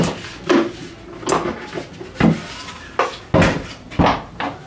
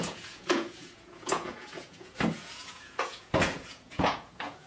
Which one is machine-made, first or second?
second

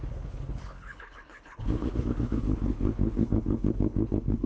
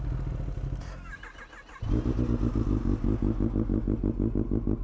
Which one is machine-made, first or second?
first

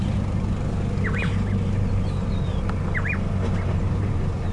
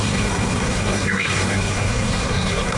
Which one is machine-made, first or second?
second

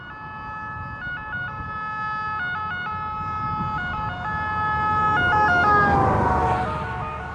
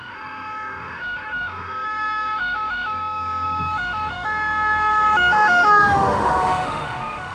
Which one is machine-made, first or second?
second